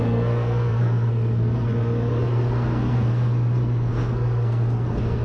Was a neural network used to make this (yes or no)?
yes